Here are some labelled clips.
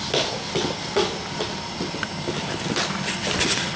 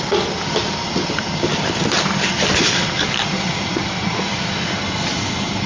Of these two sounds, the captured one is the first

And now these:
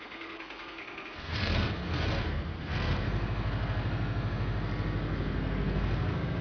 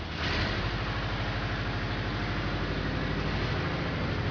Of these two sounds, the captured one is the second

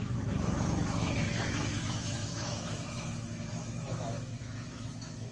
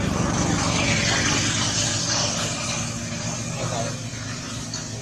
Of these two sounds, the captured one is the second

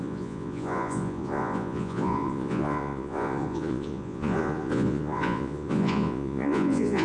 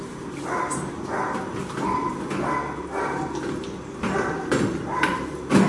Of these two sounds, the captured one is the second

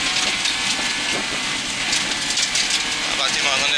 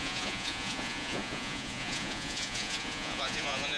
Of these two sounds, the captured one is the first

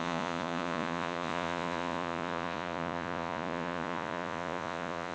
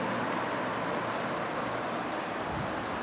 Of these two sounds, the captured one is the second